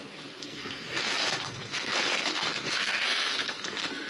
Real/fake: fake